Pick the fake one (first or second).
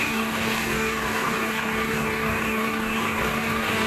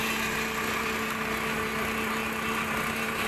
first